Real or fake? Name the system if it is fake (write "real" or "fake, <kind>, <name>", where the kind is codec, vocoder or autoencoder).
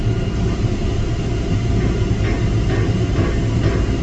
real